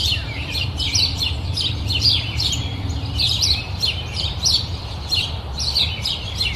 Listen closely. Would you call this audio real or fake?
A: fake